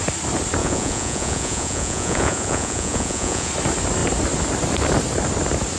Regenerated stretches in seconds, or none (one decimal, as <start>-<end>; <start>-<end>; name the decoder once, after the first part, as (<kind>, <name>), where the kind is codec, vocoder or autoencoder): 0.6-3.5 (vocoder, Vocos)